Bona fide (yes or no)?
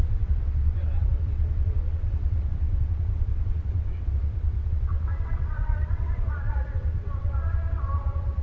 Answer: no